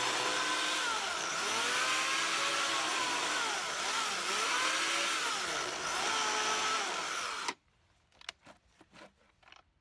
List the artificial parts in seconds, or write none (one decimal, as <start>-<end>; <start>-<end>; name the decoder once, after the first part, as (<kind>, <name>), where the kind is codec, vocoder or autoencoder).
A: none